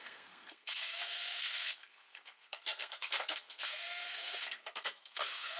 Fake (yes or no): yes